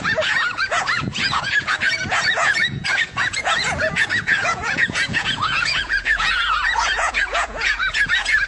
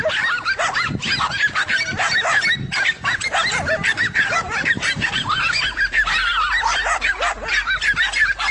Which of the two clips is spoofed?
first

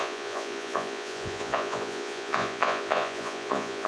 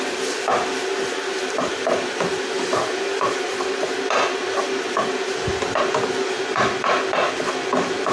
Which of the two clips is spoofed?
first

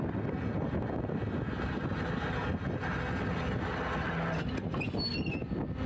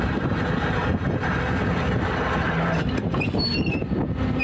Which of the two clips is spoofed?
second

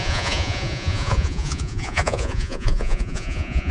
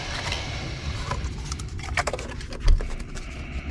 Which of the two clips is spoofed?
first